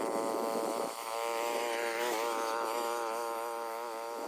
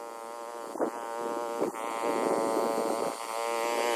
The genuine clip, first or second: second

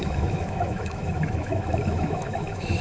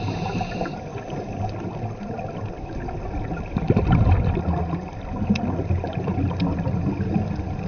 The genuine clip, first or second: second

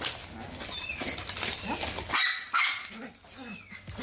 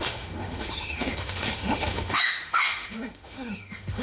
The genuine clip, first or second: first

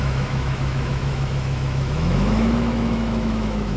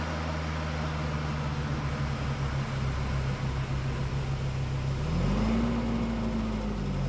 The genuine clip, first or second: second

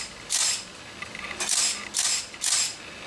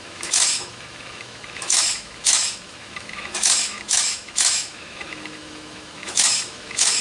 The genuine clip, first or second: first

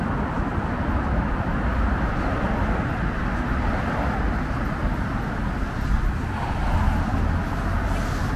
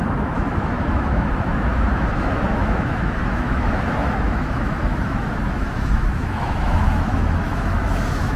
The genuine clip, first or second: first